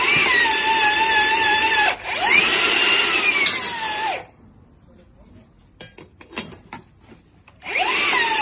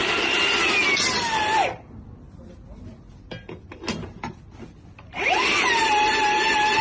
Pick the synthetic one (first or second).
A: first